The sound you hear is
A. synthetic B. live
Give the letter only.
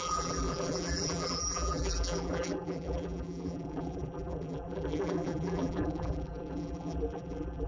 A